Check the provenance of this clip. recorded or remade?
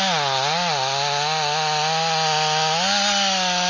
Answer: recorded